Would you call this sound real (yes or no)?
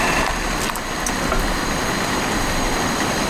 yes